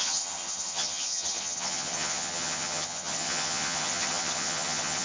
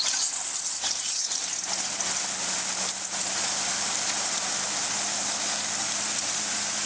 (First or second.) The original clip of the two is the second